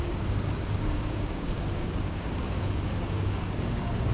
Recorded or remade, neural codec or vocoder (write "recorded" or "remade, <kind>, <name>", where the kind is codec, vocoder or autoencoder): remade, codec, DAC